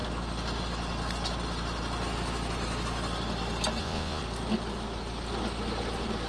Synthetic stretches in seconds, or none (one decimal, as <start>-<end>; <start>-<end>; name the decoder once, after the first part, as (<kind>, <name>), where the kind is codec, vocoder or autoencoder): 3.8-4.2 (vocoder, Vocos)